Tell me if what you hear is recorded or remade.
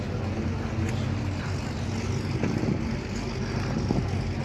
recorded